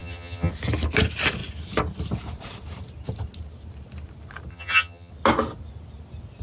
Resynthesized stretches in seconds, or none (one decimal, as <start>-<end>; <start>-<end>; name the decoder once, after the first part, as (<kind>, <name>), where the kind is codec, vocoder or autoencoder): 0.0-0.5 (vocoder, HiFi-GAN); 4.5-5.1